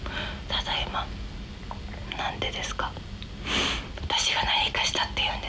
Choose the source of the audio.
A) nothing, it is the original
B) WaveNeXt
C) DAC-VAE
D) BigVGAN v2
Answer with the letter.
A